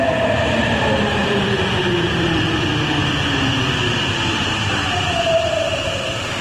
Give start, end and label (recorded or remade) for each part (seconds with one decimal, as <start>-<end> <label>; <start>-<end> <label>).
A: 0.0-2.7 remade; 2.7-4.7 recorded; 4.7-6.4 remade